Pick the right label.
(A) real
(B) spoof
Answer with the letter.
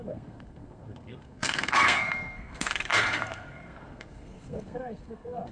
B